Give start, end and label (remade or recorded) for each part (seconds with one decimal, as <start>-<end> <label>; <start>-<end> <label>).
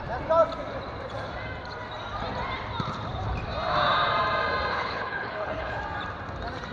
0.0-4.7 recorded; 4.7-5.8 remade; 5.8-6.7 recorded